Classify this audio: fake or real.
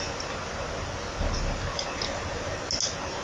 real